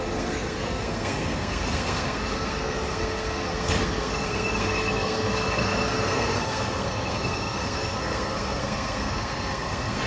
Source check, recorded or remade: remade